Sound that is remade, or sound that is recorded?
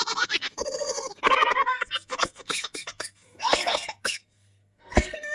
remade